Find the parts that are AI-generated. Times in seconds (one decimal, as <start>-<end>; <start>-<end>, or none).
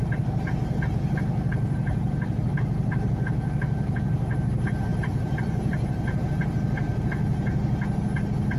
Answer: 4.9-6.3